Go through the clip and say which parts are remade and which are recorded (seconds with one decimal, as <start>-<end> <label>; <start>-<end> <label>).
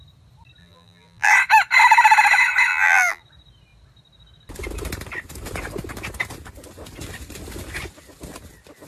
0.0-0.6 recorded; 0.6-1.3 remade; 1.3-2.7 recorded; 2.7-3.2 remade; 3.2-8.9 recorded